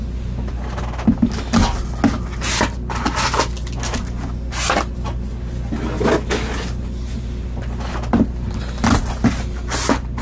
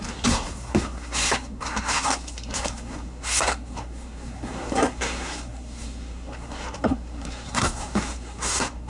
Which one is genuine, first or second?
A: first